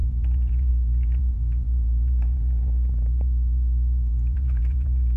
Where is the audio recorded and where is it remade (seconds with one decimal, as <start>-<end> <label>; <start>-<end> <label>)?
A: 0.0-5.2 remade